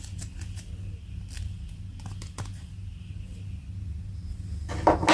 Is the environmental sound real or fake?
real